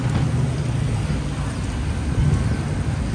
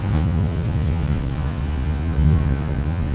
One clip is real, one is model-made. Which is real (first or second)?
first